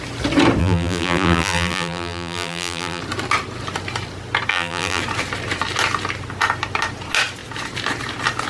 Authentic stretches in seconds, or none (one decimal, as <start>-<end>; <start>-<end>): 0.0-0.6; 3.0-4.5; 5.0-8.5